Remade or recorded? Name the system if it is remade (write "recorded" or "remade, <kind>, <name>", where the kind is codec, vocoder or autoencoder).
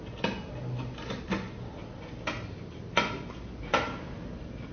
recorded